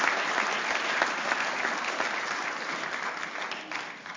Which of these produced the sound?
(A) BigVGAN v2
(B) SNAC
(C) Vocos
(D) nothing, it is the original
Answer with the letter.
D